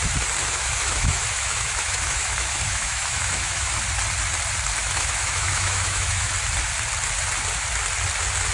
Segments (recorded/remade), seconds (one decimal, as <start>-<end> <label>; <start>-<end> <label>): 0.0-0.4 recorded; 0.4-3.7 remade; 3.7-4.8 recorded; 4.8-6.3 remade; 6.3-8.5 recorded

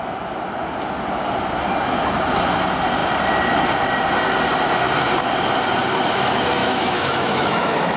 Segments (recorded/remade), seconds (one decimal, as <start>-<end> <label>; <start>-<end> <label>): 0.0-6.6 recorded; 6.6-8.0 remade

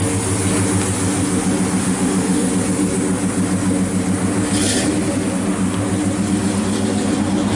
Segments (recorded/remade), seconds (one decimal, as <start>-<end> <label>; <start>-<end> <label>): 0.0-1.8 recorded; 1.8-2.5 remade; 2.5-7.6 recorded

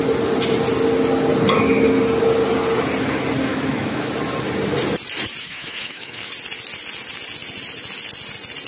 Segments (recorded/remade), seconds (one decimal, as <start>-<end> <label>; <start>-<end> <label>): 0.0-3.5 recorded; 3.5-4.1 remade; 4.1-5.4 recorded; 5.4-6.3 remade; 6.3-8.7 recorded

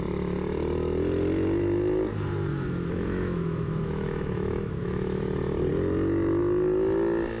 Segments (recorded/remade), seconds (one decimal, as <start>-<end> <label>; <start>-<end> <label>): 0.0-2.5 recorded; 2.5-5.2 remade; 5.2-7.4 recorded

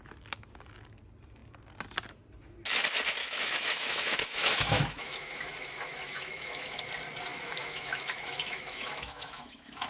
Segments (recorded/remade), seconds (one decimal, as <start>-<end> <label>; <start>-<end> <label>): 0.0-3.2 recorded; 3.2-6.8 remade; 6.8-7.3 recorded; 7.3-9.9 remade

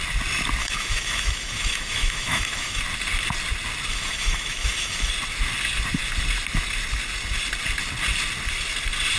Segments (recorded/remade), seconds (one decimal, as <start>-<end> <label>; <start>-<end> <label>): 0.0-0.6 recorded; 0.6-2.8 remade; 2.8-3.9 recorded; 3.9-5.1 remade; 5.1-9.2 recorded

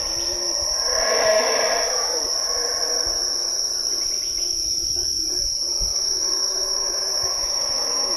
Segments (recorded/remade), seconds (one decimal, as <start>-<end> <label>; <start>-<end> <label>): 0.0-5.9 recorded; 5.9-8.2 remade